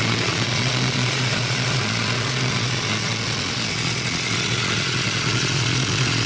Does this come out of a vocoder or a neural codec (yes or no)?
yes